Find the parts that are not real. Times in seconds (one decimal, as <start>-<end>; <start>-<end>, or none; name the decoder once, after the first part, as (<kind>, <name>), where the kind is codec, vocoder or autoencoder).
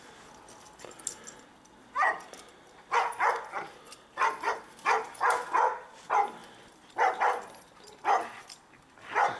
none